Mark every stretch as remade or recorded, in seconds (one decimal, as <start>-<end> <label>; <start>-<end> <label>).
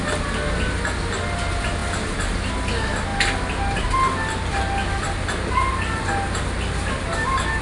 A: 0.0-7.6 recorded